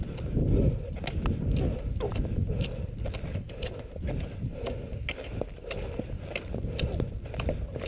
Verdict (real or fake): real